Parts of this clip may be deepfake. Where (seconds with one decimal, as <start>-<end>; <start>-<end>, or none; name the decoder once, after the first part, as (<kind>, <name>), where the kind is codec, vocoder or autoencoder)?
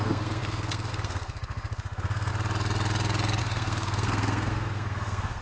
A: 0.0-2.3 (codec, SNAC); 3.4-5.4